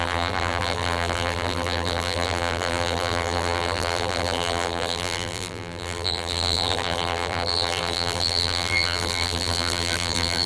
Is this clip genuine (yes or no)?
no